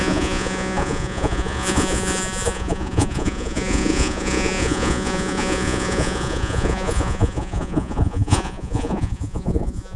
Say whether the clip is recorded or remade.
remade